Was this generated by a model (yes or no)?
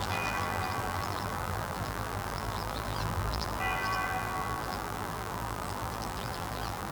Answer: yes